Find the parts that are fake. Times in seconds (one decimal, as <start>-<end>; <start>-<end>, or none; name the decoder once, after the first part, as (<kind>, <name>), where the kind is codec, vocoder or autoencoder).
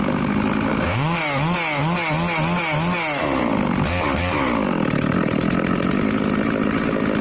0.7-1.2 (codec, DAC)